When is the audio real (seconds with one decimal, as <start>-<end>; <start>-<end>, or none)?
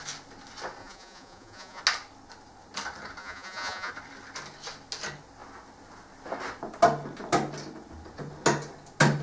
0.0-0.8; 1.8-3.2; 3.9-9.2